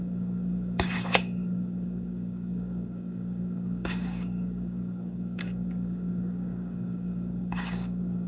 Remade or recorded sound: remade